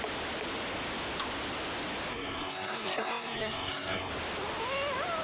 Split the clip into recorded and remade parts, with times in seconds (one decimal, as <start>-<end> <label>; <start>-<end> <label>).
0.0-2.1 recorded; 2.1-4.1 remade; 4.1-5.2 recorded